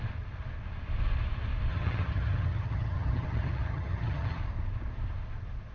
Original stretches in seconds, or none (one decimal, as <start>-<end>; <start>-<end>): 0.0-1.7; 4.4-5.7